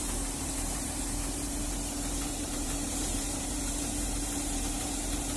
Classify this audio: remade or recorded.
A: remade